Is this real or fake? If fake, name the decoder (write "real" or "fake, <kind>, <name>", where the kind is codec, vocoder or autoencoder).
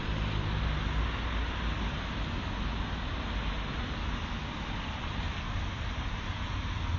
real